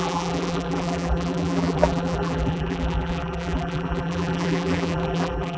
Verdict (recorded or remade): remade